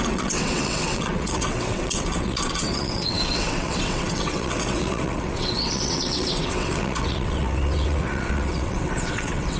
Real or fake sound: fake